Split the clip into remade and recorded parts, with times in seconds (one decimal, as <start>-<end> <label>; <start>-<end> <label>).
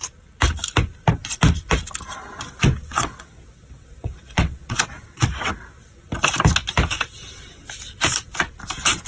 0.0-2.8 recorded; 2.8-5.5 remade; 5.5-9.1 recorded